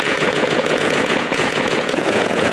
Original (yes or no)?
no